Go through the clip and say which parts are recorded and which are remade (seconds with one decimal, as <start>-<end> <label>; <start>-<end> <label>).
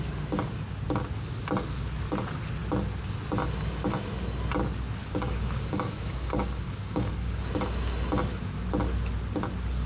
0.0-5.0 recorded; 5.0-7.5 remade; 7.5-9.9 recorded